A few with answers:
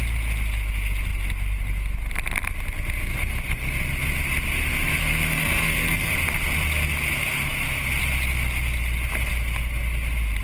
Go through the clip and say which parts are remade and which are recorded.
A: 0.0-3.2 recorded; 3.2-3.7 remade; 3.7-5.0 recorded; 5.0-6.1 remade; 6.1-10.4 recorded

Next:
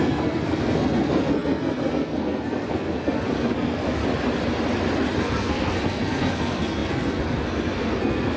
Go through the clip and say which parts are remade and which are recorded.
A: 0.0-4.0 remade; 4.0-5.2 recorded; 5.2-8.4 remade

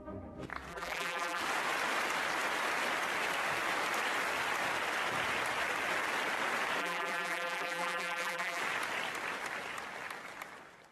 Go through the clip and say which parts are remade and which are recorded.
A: 0.0-0.7 recorded; 0.7-1.4 remade; 1.4-6.8 recorded; 6.8-8.6 remade; 8.6-10.9 recorded

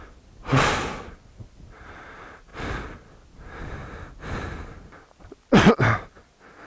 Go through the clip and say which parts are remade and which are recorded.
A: 0.0-6.7 recorded

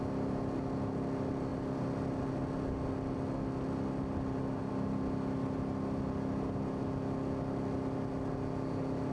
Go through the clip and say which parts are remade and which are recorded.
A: 0.0-9.1 recorded

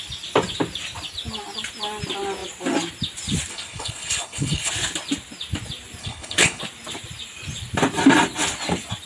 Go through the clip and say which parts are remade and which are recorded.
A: 0.0-3.5 recorded; 3.5-4.7 remade; 4.7-6.0 recorded; 6.0-6.6 remade; 6.6-9.1 recorded

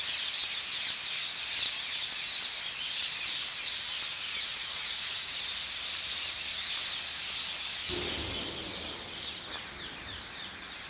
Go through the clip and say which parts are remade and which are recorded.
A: 0.0-4.1 recorded; 4.1-5.4 remade; 5.4-10.9 recorded

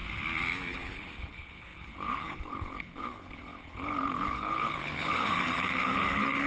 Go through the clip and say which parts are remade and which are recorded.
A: 0.0-0.7 recorded; 0.7-6.5 remade